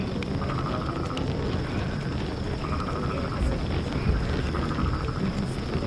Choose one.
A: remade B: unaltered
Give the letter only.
B